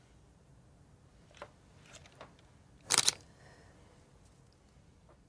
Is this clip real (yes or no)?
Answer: yes